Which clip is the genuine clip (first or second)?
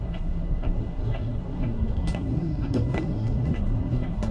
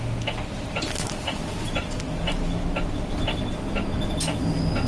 second